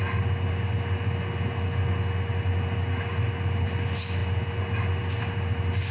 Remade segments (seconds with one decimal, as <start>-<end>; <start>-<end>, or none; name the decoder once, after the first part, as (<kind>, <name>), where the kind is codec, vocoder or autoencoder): none